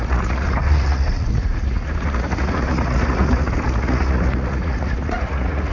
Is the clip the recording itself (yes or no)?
no